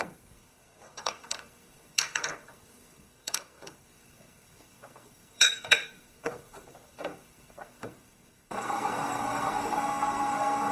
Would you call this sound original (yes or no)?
no